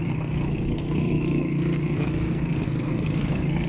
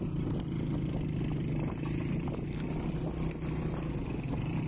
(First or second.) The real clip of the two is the second